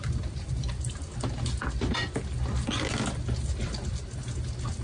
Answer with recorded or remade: recorded